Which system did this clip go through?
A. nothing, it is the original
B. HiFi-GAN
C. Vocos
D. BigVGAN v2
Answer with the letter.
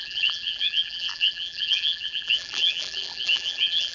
D